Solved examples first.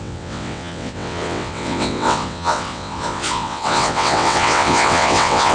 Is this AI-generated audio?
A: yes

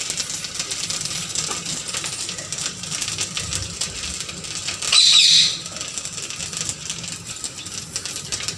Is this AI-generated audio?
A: no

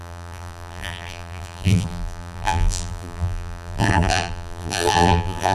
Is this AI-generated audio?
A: yes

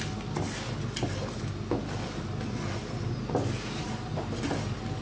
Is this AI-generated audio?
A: no